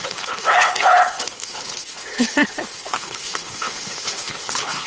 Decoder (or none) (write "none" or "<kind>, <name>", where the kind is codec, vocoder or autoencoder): codec, HILCodec